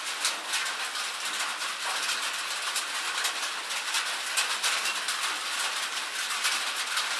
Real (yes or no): yes